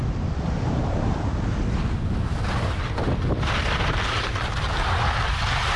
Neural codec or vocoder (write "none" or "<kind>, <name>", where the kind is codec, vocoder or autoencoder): none